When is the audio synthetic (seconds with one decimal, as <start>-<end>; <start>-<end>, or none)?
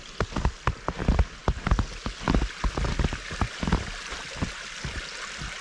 none